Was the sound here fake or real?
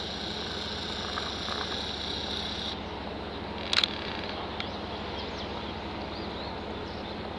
real